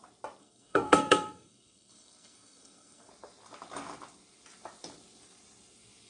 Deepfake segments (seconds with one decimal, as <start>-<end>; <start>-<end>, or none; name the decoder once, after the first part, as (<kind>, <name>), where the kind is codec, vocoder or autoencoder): 0.4-3.1 (codec, SNAC)